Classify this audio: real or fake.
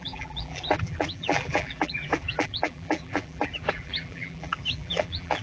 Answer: fake